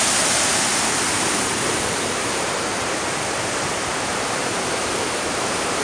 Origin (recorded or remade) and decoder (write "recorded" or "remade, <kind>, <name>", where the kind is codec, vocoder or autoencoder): remade, vocoder, BigVGAN v2